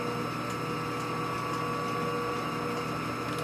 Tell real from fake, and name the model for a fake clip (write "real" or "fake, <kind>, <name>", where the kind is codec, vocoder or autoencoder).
real